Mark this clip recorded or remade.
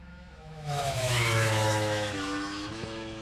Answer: remade